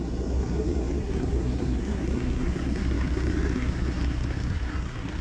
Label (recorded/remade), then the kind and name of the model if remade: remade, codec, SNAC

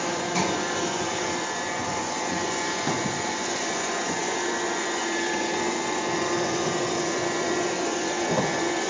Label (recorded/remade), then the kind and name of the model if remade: remade, vocoder, Vocos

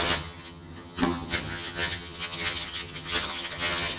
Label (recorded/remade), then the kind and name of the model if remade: remade, vocoder, HiFi-GAN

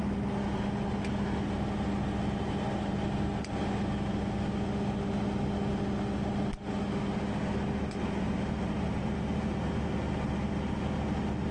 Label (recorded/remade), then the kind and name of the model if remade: recorded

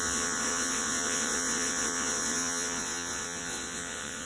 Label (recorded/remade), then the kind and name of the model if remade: remade, vocoder, WaveNeXt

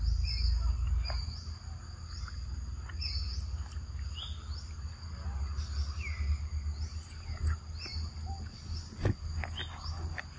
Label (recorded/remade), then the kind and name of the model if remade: recorded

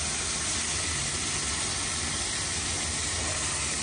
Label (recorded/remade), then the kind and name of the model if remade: recorded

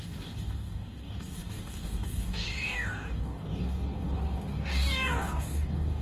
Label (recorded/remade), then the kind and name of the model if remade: remade, codec, DAC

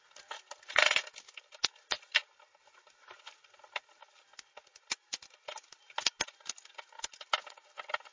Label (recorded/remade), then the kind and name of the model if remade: recorded